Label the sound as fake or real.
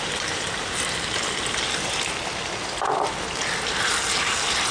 real